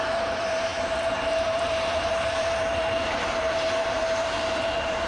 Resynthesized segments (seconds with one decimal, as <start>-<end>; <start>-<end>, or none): 0.0-5.1